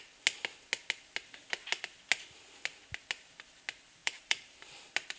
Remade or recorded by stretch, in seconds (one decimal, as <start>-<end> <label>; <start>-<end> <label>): 0.0-4.0 recorded; 4.0-4.6 remade; 4.6-5.2 recorded